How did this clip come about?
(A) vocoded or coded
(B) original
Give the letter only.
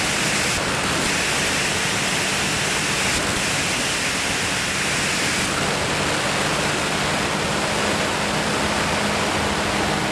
B